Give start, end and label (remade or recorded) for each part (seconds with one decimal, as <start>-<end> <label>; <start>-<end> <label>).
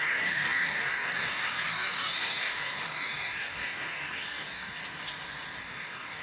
0.0-4.8 remade; 4.8-5.6 recorded; 5.6-6.2 remade